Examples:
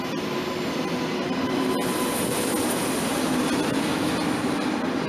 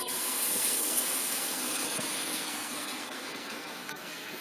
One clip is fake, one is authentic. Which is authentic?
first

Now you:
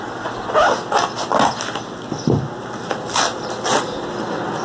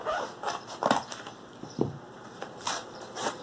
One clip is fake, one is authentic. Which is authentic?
first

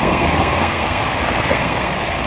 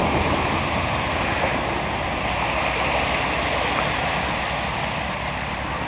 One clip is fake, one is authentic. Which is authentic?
second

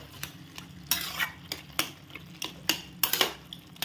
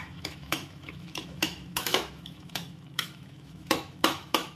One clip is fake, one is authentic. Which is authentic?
first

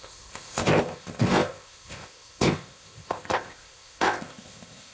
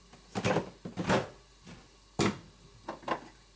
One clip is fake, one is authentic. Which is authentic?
second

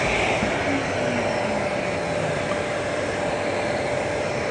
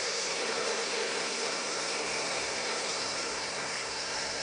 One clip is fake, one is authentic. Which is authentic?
first